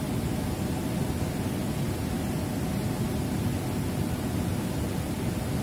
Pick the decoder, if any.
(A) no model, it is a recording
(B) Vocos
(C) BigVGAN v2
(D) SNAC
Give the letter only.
A